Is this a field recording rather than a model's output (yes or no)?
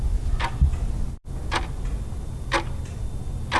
yes